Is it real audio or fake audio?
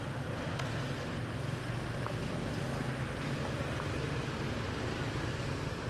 real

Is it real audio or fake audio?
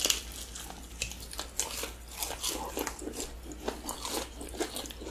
real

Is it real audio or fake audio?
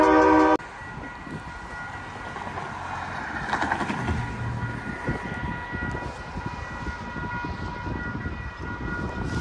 real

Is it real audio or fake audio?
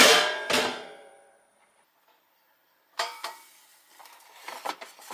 fake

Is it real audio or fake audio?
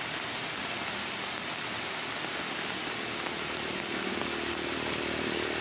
real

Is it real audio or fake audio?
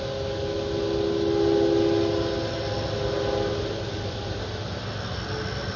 real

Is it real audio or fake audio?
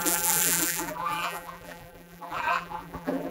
fake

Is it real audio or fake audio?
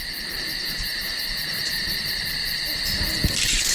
fake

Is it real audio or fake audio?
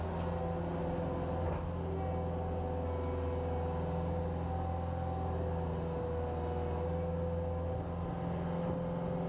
real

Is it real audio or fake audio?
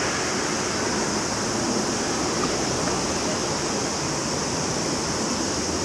real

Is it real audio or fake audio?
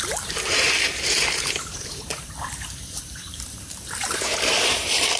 fake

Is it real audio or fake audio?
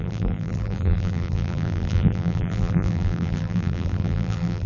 fake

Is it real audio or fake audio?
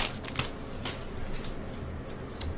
real